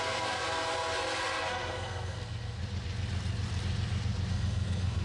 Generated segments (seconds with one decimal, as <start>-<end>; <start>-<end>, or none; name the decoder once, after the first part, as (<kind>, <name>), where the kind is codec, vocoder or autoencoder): 0.0-0.4 (codec, SNAC); 1.5-2.6; 4.3-5.0